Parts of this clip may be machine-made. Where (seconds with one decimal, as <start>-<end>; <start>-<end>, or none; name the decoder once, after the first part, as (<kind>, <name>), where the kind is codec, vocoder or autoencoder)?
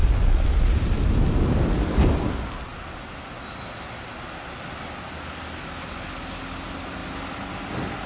none